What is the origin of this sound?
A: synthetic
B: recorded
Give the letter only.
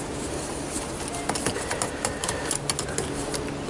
B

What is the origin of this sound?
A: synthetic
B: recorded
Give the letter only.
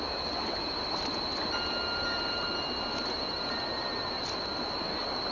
B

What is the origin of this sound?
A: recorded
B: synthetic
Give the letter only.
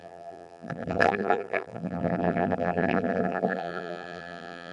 B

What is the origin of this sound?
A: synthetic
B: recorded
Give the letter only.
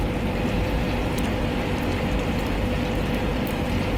A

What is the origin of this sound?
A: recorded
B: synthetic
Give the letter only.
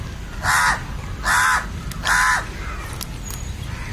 A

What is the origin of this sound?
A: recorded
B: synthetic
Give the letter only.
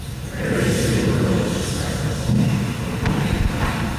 A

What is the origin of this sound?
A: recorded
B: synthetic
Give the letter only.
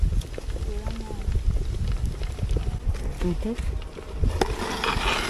A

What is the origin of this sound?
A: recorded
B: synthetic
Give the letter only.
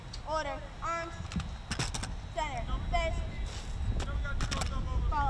A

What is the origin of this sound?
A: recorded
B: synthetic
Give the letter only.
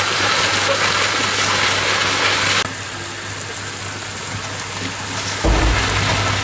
A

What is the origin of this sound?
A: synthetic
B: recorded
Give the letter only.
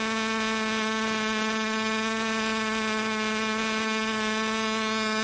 B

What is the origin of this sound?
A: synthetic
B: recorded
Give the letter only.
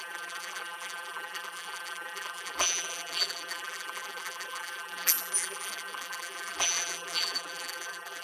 A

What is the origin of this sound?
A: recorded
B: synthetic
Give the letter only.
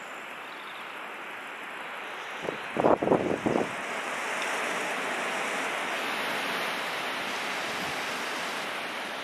A